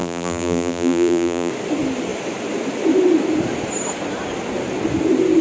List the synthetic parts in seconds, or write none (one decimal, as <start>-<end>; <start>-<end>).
0.0-1.5

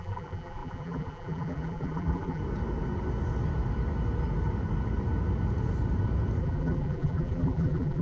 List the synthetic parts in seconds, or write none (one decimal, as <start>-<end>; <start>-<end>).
0.0-2.4; 6.4-8.0